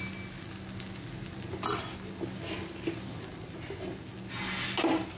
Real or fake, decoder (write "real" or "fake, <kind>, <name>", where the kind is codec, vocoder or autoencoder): real